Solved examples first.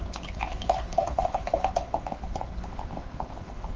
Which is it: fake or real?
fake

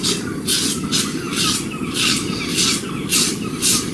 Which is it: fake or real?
real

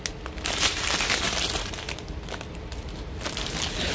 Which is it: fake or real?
real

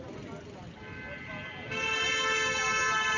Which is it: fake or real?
real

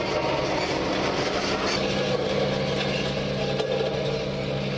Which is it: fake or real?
real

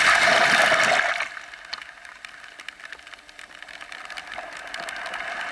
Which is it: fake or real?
real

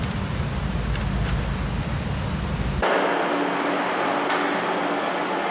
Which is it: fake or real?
real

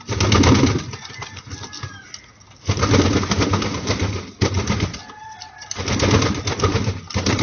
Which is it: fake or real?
real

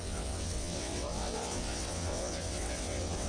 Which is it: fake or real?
fake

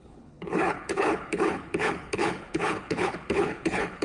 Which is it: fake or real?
fake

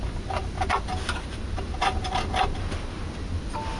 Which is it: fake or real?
real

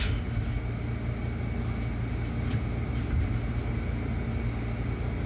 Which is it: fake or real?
real